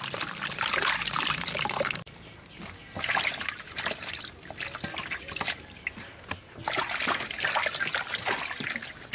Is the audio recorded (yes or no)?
yes